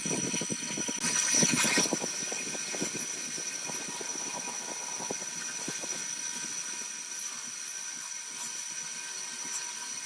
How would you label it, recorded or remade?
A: recorded